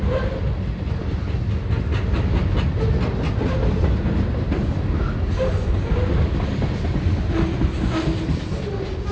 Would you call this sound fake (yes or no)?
no